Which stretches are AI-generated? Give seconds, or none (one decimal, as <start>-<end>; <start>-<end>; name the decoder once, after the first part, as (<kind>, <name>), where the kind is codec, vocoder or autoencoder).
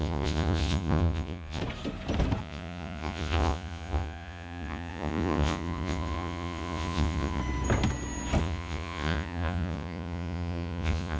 0.0-1.6 (vocoder, Vocos); 2.4-7.4; 8.4-11.2